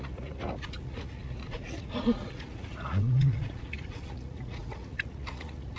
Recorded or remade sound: remade